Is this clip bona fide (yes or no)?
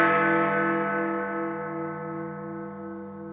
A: yes